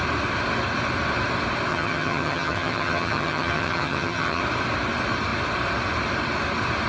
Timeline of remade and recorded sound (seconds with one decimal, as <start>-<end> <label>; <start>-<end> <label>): 0.0-1.7 recorded; 1.7-4.4 remade; 4.4-6.9 recorded